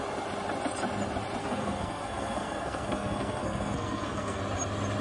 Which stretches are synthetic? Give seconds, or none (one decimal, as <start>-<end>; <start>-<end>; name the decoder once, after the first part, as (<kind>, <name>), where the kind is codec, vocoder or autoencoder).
1.4-4.4 (codec, SNAC)